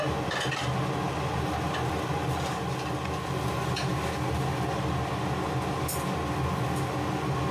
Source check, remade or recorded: recorded